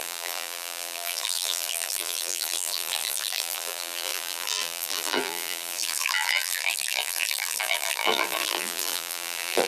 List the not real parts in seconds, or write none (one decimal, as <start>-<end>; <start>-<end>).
0.0-9.7